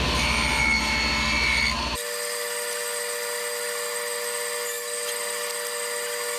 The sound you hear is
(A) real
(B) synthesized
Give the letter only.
A